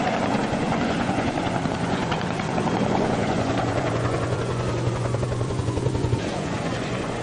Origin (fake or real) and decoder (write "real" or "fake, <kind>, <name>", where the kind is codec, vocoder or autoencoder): fake, vocoder, Vocos